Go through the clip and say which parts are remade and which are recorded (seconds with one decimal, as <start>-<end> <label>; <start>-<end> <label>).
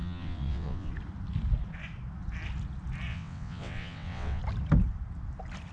0.0-0.9 remade; 0.9-3.1 recorded; 3.1-4.4 remade; 4.4-5.7 recorded